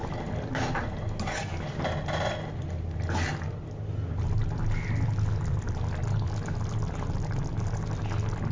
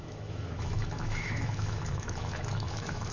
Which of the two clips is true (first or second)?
first